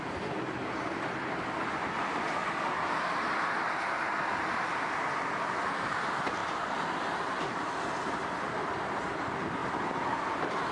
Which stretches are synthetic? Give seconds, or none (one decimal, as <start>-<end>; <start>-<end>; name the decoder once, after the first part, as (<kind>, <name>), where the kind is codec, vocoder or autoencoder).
none